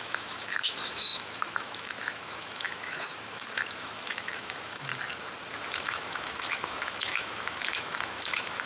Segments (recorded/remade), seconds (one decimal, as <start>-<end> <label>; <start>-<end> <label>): 0.0-4.9 remade; 4.9-5.7 recorded; 5.7-8.7 remade